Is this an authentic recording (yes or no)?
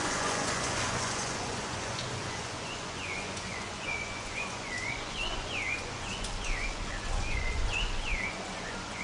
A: no